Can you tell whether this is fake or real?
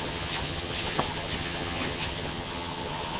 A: fake